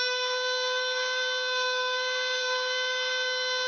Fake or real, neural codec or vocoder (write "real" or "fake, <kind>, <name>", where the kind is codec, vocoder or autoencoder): fake, codec, DAC